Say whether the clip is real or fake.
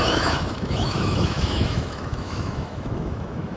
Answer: fake